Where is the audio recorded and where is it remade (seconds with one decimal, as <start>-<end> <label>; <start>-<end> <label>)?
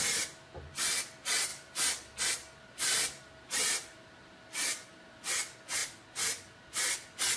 0.0-1.5 recorded; 1.5-5.3 remade; 5.3-7.4 recorded